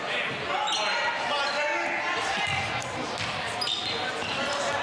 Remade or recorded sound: recorded